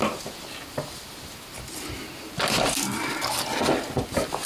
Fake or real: real